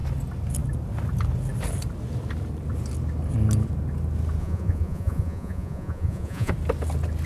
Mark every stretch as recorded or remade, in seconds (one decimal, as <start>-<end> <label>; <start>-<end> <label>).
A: 0.0-4.4 recorded; 4.4-6.5 remade; 6.5-7.3 recorded